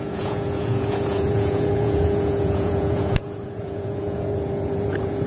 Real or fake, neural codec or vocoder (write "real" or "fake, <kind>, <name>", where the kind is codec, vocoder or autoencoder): fake, vocoder, Vocos